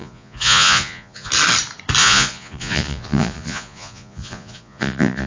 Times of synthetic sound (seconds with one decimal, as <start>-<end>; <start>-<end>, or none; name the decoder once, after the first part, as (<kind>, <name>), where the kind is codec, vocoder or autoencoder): 0.0-1.3 (vocoder, Vocos); 2.0-5.3